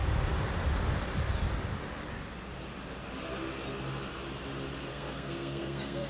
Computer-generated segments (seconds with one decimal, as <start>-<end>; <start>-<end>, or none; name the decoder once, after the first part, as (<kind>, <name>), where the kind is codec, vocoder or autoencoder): 4.9-6.1 (codec, SNAC)